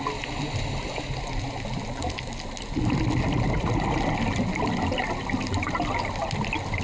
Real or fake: real